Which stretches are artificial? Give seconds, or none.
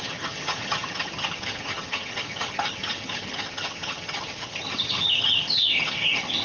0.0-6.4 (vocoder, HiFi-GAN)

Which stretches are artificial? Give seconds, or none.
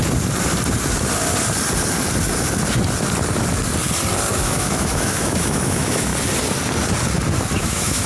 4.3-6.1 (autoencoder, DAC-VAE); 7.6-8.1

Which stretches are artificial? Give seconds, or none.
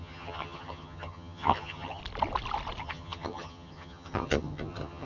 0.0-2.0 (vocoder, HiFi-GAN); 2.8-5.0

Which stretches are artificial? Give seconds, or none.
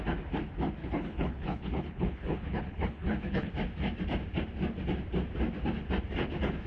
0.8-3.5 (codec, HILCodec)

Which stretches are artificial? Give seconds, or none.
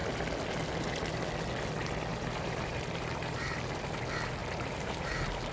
2.1-4.0 (vocoder, BigVGAN v2); 4.4-5.5